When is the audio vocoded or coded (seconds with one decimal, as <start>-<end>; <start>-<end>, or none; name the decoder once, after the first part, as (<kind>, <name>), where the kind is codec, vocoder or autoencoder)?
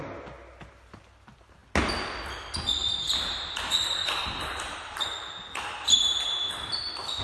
2.8-6.5 (vocoder, BigVGAN v2)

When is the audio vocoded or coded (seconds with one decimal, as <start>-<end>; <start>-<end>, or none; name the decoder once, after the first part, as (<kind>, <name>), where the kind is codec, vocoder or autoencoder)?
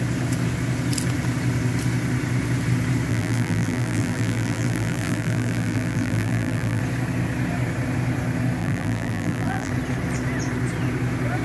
3.1-6.8 (vocoder, BigVGAN v2); 8.6-9.7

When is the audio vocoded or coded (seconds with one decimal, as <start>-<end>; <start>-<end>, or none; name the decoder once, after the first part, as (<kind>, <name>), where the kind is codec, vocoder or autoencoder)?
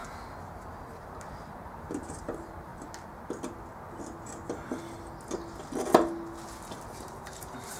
0.7-2.7 (vocoder, BigVGAN v2); 7.0-7.8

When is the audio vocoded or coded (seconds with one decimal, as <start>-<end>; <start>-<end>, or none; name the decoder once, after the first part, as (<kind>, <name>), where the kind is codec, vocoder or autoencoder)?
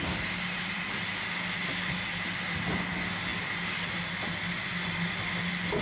none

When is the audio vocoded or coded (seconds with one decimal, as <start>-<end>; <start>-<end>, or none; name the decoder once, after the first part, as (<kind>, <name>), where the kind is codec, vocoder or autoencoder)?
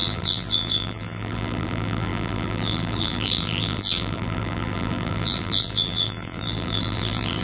0.0-7.4 (vocoder, BigVGAN v2)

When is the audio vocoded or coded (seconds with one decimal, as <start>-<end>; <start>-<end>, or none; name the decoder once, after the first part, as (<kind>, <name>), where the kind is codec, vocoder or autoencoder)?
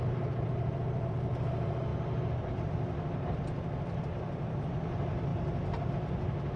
0.0-1.9 (vocoder, BigVGAN v2); 3.6-5.3; 5.9-6.6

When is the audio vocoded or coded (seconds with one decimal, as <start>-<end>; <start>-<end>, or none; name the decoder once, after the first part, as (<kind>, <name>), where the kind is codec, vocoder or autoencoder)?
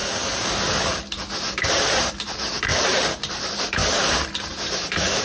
1.5-3.8 (vocoder, BigVGAN v2); 4.5-5.2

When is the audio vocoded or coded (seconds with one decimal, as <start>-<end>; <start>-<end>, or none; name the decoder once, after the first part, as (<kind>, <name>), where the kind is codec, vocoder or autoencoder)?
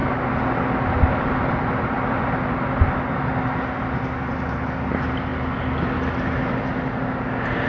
none